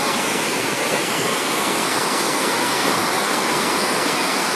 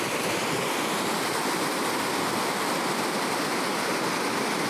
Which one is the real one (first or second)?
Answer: second